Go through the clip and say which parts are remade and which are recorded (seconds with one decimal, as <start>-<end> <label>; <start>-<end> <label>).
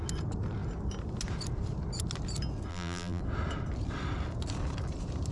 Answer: 0.0-2.7 recorded; 2.7-3.2 remade; 3.2-5.3 recorded